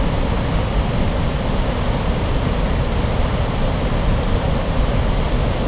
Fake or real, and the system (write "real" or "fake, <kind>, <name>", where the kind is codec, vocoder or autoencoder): real